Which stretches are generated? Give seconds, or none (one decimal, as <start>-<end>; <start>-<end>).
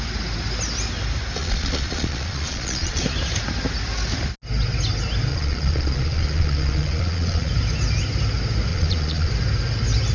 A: 1.4-3.0; 5.3-7.5; 8.7-9.3